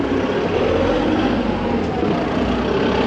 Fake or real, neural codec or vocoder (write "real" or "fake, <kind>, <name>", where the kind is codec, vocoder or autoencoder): real